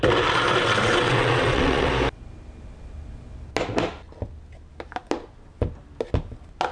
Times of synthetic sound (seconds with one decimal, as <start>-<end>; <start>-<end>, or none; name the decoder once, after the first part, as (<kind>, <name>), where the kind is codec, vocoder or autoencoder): 0.6-1.9 (vocoder, WaveNeXt)